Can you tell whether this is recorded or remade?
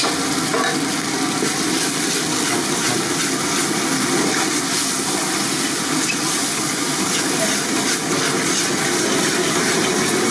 recorded